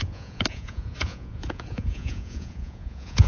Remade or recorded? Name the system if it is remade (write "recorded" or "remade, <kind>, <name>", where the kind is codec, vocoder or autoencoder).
remade, vocoder, Vocos